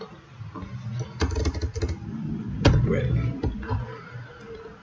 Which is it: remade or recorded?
recorded